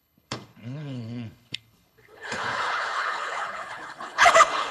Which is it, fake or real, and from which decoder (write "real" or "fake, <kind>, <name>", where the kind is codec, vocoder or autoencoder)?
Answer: fake, codec, HILCodec